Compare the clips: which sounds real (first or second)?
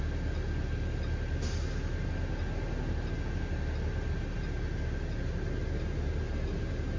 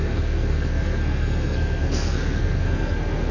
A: first